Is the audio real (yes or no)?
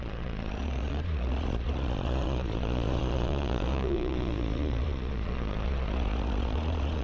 no